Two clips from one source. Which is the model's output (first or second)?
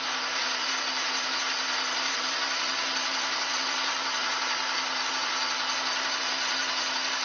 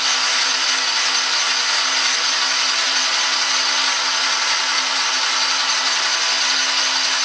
first